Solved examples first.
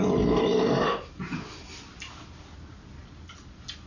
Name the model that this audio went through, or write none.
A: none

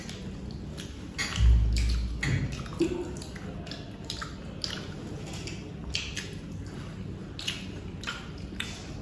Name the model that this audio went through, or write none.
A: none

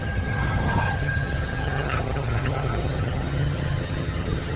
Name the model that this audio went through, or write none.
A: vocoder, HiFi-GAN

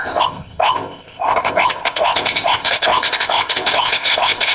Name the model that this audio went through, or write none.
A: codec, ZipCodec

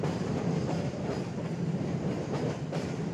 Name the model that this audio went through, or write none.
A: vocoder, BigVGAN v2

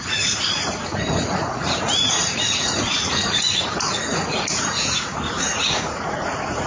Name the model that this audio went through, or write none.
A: vocoder, Vocos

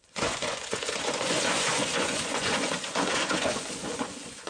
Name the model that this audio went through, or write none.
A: vocoder, Vocos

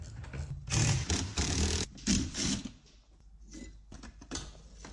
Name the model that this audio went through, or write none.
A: none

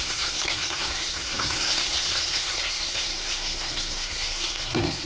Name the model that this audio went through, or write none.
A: codec, SNAC